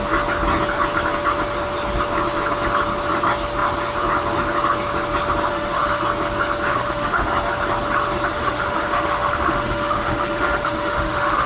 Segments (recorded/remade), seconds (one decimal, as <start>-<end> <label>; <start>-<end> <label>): 0.0-5.5 recorded; 5.5-6.0 remade; 6.0-6.7 recorded; 6.7-7.3 remade; 7.3-8.3 recorded; 8.3-11.5 remade